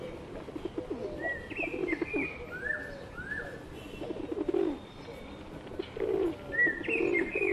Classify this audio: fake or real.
real